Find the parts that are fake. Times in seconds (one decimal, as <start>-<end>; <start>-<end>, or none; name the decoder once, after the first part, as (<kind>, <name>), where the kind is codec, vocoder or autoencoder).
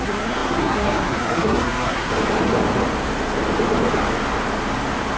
0.0-2.1 (codec, SNAC)